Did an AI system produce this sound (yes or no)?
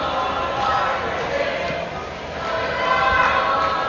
yes